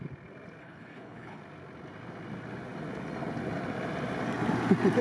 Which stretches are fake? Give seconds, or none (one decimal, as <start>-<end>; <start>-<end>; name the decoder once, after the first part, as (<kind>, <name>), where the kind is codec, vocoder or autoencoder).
0.6-1.4 (codec, HILCodec)